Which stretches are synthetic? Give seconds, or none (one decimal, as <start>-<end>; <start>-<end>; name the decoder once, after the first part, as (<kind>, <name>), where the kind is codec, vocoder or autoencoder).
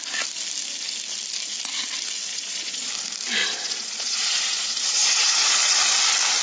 2.3-2.9 (vocoder, Vocos); 3.4-5.8